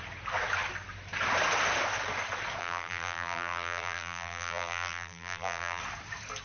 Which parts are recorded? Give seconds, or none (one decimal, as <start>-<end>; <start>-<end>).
0.0-2.6; 5.8-6.4